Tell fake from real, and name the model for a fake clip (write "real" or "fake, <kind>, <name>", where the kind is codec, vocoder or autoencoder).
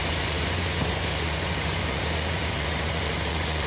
fake, vocoder, Vocos